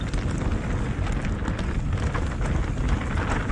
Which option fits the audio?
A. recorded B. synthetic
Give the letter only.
A